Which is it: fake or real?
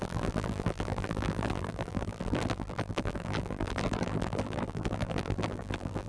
fake